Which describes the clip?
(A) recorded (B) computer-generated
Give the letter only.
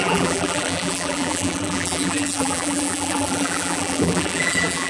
B